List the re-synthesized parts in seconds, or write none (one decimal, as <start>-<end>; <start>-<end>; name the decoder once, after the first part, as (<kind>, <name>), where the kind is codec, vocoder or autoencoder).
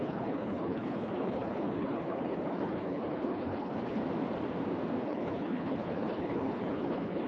0.0-4.0 (codec, HILCodec); 5.0-7.3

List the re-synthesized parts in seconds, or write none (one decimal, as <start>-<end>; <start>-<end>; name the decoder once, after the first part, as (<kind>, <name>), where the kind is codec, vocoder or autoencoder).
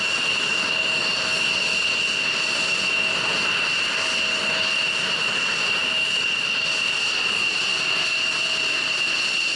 none